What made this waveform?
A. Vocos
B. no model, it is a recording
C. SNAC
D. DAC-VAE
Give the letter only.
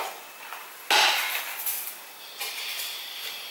B